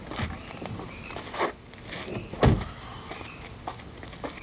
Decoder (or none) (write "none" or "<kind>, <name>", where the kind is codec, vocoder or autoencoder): none